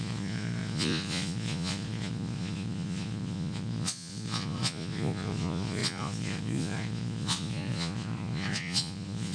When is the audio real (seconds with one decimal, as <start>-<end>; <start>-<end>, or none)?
none